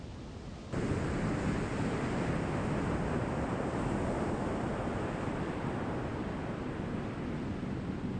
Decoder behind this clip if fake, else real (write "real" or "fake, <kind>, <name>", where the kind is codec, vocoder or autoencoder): real